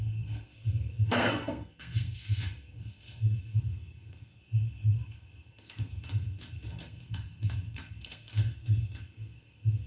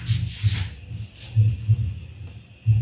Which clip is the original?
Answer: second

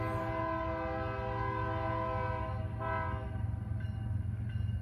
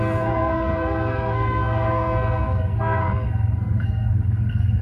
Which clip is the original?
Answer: first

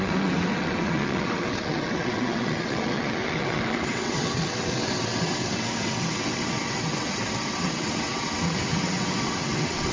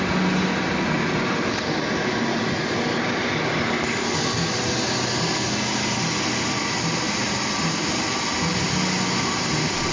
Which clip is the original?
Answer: second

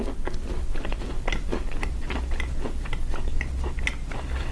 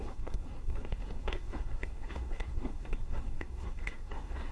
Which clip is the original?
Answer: first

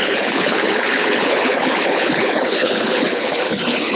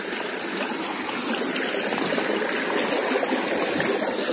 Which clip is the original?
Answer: second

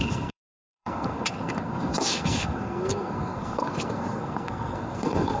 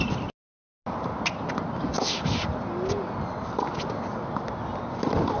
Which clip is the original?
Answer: second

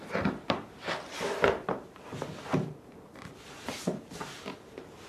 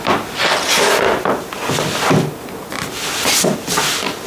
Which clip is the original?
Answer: second